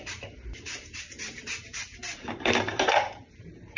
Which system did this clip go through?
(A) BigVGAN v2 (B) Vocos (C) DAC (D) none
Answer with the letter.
A